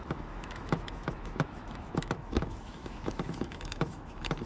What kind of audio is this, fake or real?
fake